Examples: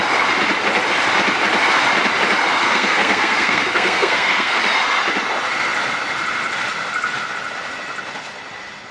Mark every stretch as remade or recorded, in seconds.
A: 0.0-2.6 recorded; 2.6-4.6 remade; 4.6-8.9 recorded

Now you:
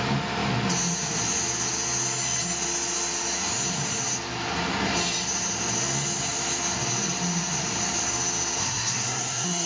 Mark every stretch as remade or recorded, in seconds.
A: 0.0-8.6 recorded; 8.6-9.7 remade

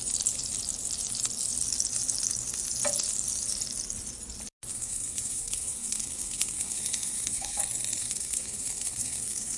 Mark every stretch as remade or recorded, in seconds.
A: 0.0-4.7 recorded; 4.7-7.6 remade; 7.6-8.0 recorded; 8.0-9.6 remade

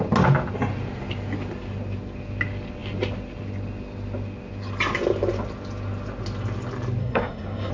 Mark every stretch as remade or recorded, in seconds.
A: 0.0-7.0 recorded; 7.0-7.7 remade

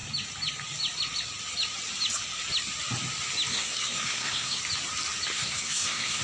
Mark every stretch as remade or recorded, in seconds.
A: 0.0-3.5 recorded; 3.5-4.6 remade; 4.6-5.3 recorded; 5.3-6.2 remade

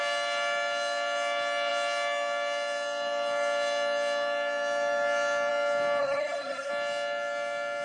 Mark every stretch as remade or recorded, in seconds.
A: 0.0-6.0 recorded; 6.0-6.7 remade; 6.7-7.8 recorded